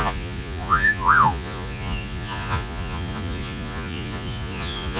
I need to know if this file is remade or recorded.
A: remade